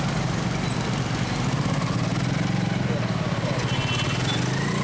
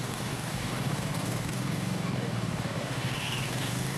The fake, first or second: second